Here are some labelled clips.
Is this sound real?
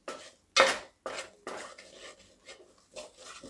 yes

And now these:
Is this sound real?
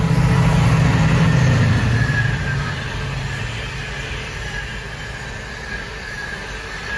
yes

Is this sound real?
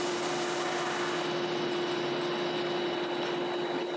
yes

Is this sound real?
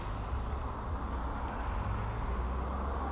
yes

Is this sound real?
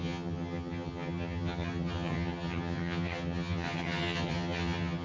no